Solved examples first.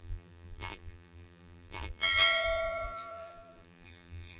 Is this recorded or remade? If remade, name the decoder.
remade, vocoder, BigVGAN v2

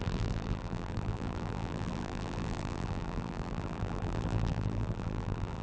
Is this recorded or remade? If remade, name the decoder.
remade, vocoder, BigVGAN v2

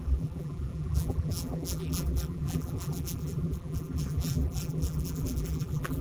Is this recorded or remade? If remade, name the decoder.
remade, vocoder, BigVGAN v2